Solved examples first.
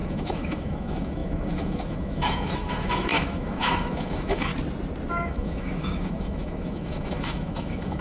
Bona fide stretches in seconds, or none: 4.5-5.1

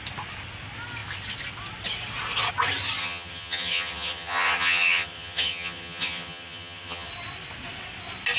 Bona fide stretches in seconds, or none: 0.0-3.0; 7.1-8.4

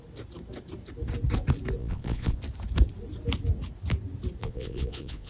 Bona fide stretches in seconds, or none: 0.0-1.8; 2.4-4.4

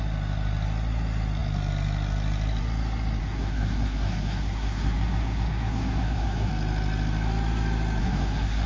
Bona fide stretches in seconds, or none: 0.0-3.2; 6.5-8.0

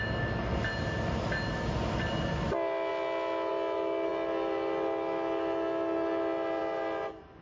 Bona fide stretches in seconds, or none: 0.0-7.4

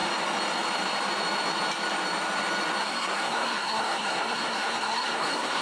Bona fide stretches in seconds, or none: 0.0-2.8

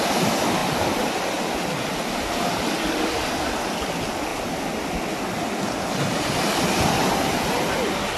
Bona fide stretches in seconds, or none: 0.0-8.2